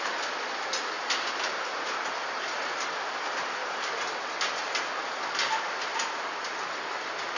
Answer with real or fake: real